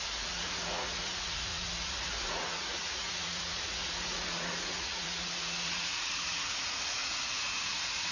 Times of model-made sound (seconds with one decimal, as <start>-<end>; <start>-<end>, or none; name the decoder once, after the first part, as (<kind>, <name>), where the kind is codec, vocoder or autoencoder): 0.0-8.1 (vocoder, Vocos)